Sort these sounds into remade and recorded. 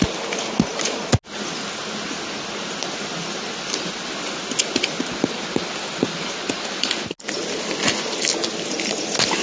recorded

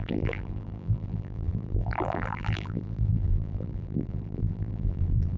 remade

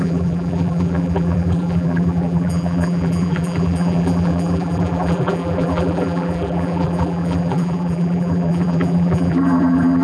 remade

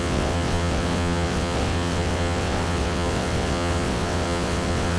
remade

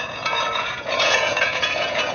remade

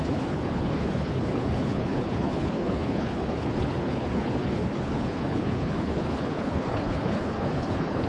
remade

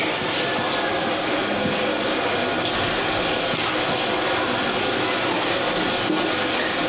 recorded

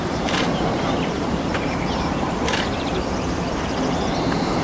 remade